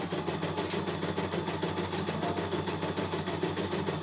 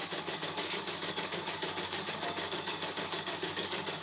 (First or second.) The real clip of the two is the first